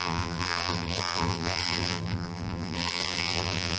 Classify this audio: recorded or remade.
remade